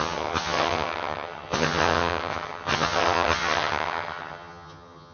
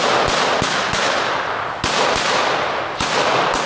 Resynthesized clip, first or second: first